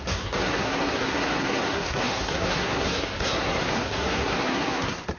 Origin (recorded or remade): remade